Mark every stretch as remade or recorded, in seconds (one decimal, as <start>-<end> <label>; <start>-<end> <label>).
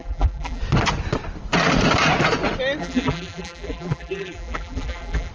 0.0-0.6 remade; 0.6-2.8 recorded; 2.8-5.3 remade